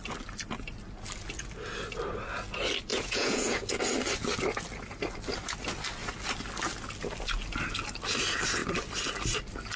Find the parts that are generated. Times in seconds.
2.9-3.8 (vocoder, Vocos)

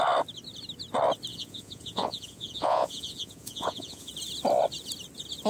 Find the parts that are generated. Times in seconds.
1.3-4.1 (vocoder, Vocos)

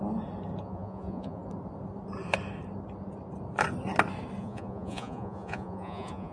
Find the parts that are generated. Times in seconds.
0.6-1.4 (vocoder, Vocos); 4.4-6.3

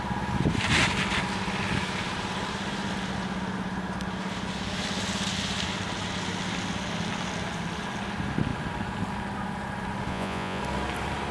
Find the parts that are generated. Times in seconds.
10.1-10.6 (vocoder, Vocos)

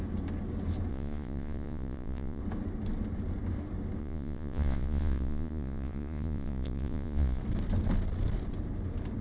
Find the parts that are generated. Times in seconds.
0.9-2.4 (vocoder, Vocos); 4.0-7.4

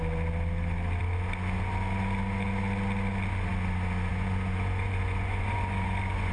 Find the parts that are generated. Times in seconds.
4.1-6.3 (vocoder, Vocos)